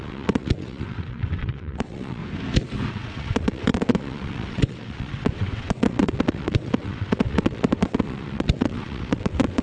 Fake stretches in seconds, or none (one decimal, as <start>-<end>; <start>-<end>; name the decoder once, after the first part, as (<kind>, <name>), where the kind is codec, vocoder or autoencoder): 0.0-2.2 (vocoder, WaveNeXt); 2.9-9.6